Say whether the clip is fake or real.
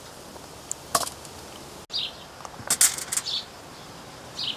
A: real